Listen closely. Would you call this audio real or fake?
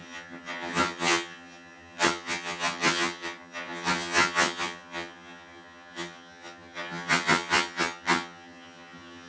fake